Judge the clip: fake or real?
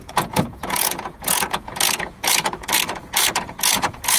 fake